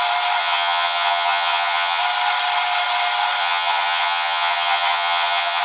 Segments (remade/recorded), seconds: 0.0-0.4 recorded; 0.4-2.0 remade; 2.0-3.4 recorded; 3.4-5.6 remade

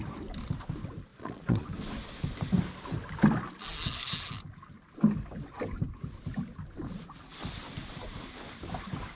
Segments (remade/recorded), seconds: 0.0-1.1 recorded; 1.1-1.7 remade; 1.7-9.2 recorded

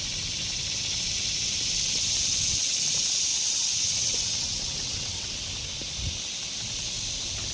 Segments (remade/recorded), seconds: 0.0-3.3 recorded; 3.3-5.3 remade; 5.3-7.5 recorded

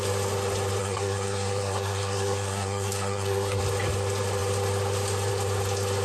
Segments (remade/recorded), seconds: 0.0-0.8 recorded; 0.8-3.6 remade; 3.6-6.0 recorded